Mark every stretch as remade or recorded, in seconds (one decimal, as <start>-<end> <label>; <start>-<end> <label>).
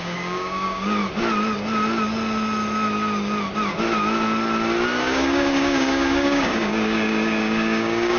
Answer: 0.0-1.0 remade; 1.0-5.0 recorded; 5.0-8.2 remade